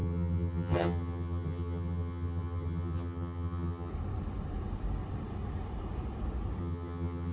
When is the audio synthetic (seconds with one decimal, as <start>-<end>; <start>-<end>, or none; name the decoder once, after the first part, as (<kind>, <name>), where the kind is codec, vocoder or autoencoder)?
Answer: 0.0-3.9 (vocoder, HiFi-GAN); 6.6-7.3